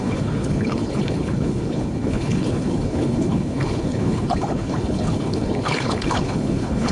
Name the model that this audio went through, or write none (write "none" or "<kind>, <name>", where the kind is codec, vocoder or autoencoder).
codec, HILCodec